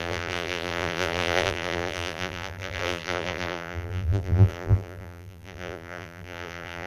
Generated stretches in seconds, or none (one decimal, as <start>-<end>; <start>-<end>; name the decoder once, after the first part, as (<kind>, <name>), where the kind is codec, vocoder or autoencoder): 0.0-6.9 (vocoder, BigVGAN v2)